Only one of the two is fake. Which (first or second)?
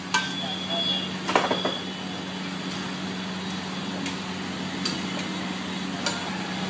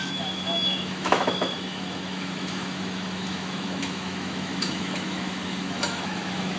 second